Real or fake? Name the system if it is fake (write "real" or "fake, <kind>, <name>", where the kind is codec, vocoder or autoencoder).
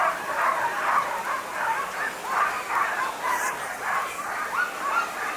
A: fake, vocoder, BigVGAN v2